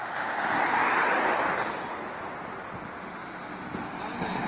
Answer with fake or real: real